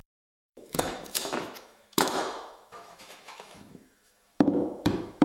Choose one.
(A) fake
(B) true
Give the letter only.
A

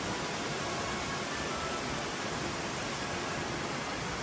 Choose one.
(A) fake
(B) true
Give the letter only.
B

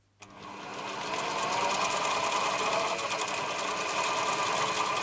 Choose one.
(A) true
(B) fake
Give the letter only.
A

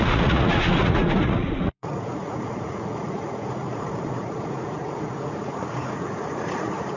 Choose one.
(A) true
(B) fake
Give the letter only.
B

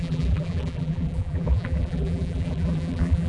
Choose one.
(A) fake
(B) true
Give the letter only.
A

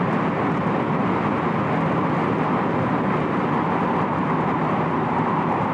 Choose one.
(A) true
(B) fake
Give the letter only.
A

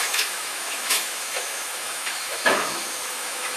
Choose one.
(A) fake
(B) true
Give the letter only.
A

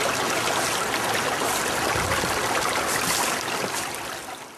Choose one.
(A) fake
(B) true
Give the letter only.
B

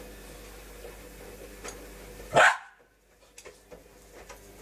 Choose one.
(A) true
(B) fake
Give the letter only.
A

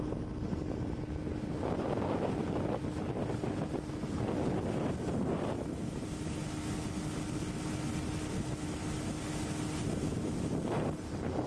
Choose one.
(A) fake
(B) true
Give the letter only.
B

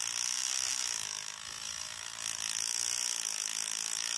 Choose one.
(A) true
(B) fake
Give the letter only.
A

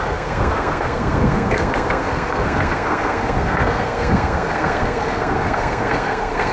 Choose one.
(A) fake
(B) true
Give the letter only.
A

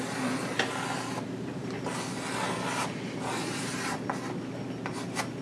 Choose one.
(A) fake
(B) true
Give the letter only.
B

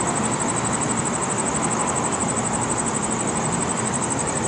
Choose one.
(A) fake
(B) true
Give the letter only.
B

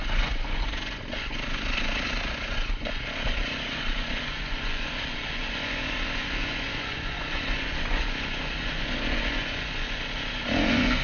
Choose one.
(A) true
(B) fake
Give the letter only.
B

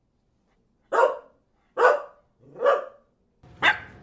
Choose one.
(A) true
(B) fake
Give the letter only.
A